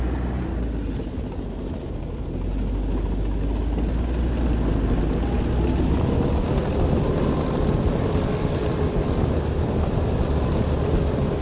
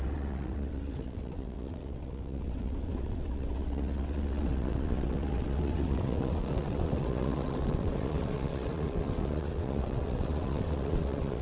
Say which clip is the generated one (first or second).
second